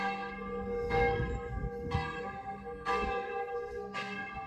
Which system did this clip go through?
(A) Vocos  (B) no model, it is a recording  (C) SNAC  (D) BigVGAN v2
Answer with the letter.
C